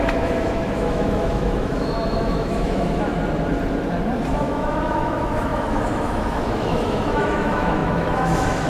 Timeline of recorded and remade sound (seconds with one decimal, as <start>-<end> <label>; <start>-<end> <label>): 0.0-3.1 remade; 3.1-4.3 recorded; 4.3-8.7 remade